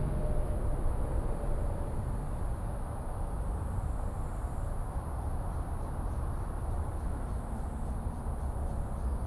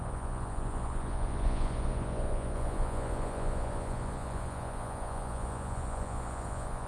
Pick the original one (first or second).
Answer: first